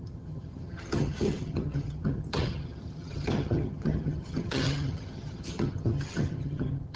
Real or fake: fake